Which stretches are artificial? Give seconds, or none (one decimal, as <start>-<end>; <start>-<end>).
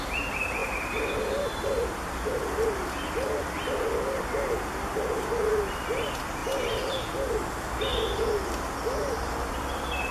0.6-4.2; 6.4-7.0; 7.9-9.3